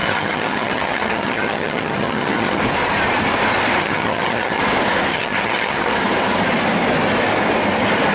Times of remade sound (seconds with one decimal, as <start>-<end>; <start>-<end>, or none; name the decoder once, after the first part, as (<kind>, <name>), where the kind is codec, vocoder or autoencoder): 0.0-2.6 (vocoder, HiFi-GAN); 3.8-4.6; 5.1-5.9